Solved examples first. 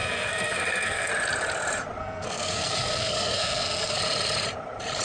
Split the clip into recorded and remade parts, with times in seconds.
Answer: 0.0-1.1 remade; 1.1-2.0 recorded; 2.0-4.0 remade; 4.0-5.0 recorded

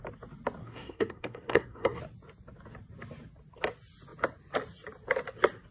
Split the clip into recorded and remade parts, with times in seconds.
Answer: 0.0-0.6 recorded; 0.6-2.0 remade; 2.0-5.7 recorded

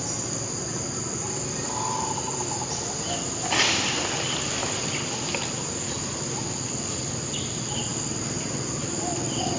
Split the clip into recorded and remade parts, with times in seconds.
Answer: 0.0-9.6 recorded

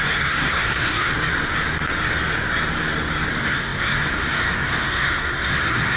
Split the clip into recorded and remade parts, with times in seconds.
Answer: 0.0-1.1 remade; 1.1-3.3 recorded; 3.3-6.0 remade

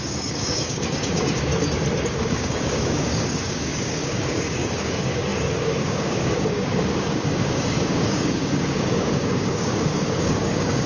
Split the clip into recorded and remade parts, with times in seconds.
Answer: 0.0-1.5 remade; 1.5-2.2 recorded; 2.2-10.9 remade

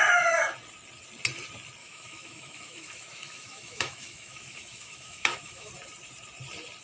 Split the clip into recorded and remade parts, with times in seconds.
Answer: 0.0-1.8 recorded; 1.8-5.7 remade; 5.7-6.8 recorded

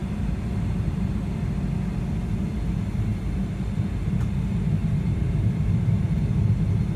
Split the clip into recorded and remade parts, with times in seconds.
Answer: 0.0-1.4 remade; 1.4-4.8 recorded; 4.8-5.9 remade; 5.9-7.0 recorded

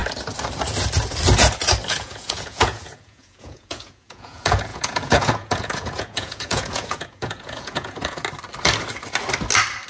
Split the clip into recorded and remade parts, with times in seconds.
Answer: 0.0-1.9 recorded; 1.9-8.2 remade; 8.2-9.9 recorded